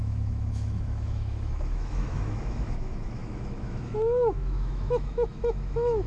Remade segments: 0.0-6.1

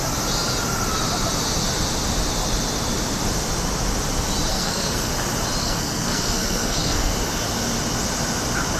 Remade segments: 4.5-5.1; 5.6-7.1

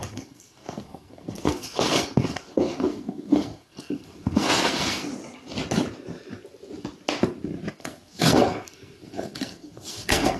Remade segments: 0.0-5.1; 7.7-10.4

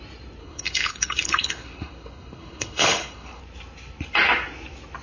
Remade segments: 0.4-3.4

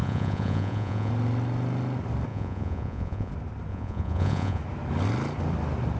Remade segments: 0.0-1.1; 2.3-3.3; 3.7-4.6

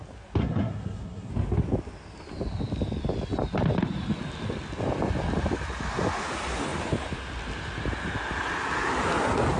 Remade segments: 0.4-1.3

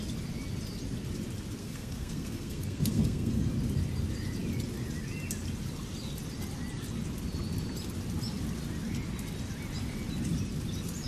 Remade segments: 1.6-3.5

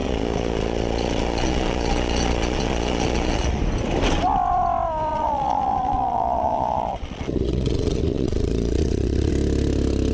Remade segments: 0.0-3.6; 5.1-9.3